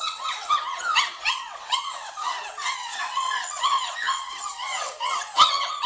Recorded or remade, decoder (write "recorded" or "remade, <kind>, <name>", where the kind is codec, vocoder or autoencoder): remade, vocoder, WaveNeXt